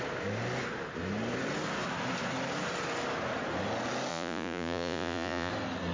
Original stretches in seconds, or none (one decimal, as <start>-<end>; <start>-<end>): 0.0-4.1; 5.5-5.9